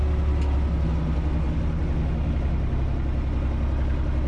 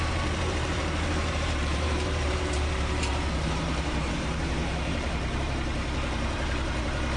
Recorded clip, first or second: first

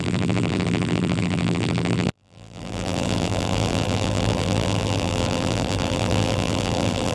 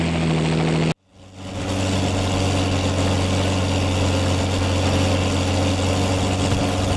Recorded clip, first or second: second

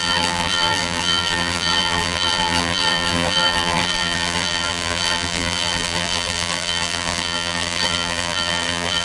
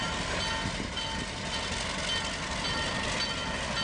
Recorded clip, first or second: second